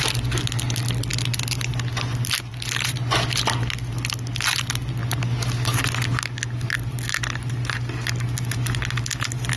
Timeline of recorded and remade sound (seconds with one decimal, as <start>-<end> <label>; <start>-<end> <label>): 0.0-9.6 recorded